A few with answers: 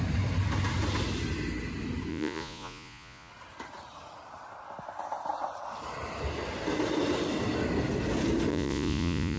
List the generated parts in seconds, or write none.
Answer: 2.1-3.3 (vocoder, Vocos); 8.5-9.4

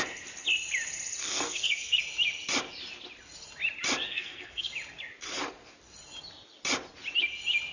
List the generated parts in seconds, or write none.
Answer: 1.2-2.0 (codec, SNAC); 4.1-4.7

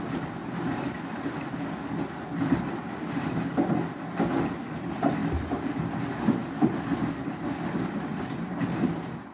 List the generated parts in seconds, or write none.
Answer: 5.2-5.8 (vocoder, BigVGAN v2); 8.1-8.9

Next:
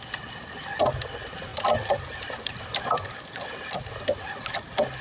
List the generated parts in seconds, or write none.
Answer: 1.5-4.3 (vocoder, BigVGAN v2)

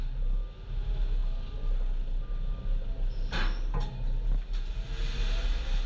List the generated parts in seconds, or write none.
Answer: none

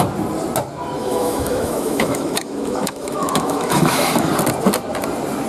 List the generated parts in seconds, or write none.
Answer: 1.0-4.3 (autoencoder, DAC-VAE)

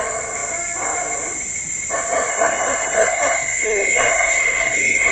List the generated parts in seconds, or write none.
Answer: 2.3-5.1 (codec, SNAC)

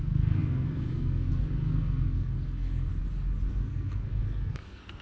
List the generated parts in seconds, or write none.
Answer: 0.0-2.9 (codec, SNAC); 3.5-5.0